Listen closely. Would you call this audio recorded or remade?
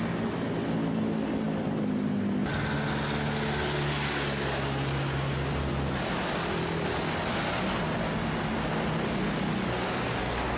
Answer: recorded